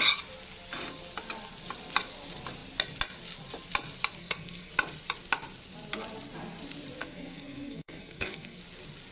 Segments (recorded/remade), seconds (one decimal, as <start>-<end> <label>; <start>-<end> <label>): 0.0-4.2 recorded; 4.2-4.7 remade; 4.7-7.0 recorded; 7.0-8.6 remade; 8.6-9.1 recorded

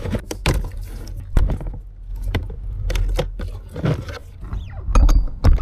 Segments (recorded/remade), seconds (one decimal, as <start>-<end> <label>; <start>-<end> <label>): 0.0-2.1 recorded; 2.1-3.2 remade; 3.2-5.6 recorded

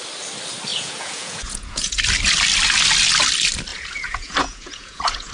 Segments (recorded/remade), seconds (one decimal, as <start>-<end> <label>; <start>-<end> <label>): 0.0-0.7 recorded; 0.7-2.0 remade; 2.0-3.7 recorded; 3.7-5.3 remade